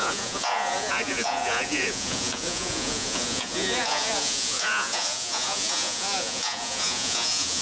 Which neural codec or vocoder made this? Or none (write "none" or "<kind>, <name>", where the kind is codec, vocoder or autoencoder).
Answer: vocoder, Vocos